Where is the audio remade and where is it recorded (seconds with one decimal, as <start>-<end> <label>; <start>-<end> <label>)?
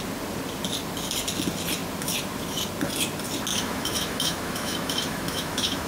0.0-3.5 recorded; 3.5-5.9 remade